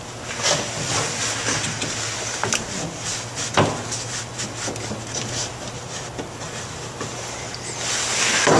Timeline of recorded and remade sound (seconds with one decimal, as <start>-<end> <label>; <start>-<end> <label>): 0.0-8.6 recorded